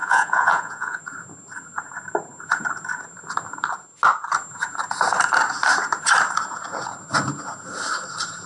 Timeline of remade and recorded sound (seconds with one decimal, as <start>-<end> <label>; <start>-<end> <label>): 0.0-1.0 remade; 1.0-8.5 recorded